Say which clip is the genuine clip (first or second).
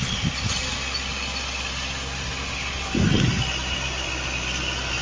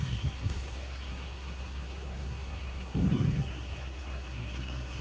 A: first